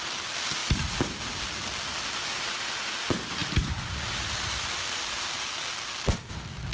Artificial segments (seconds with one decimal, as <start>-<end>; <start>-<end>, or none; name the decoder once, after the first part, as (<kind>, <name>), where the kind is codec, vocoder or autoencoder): none